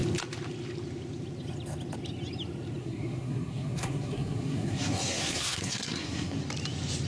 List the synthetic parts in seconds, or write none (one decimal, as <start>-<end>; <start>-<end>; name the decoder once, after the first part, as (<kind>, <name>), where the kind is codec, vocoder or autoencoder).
2.8-6.4 (codec, SNAC)